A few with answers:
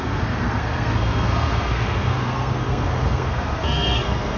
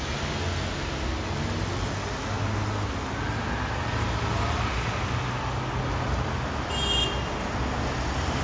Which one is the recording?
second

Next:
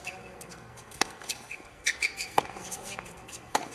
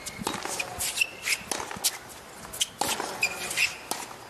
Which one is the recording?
second